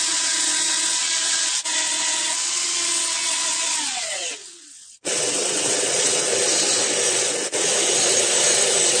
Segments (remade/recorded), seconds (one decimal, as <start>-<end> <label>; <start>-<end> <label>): 0.0-6.3 remade; 6.3-7.1 recorded; 7.1-7.7 remade; 7.7-9.0 recorded